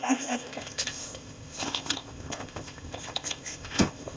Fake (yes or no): yes